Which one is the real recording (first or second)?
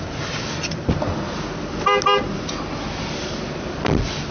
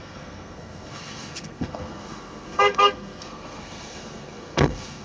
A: first